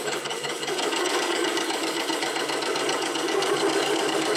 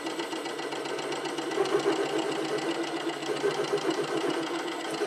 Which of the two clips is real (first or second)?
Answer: second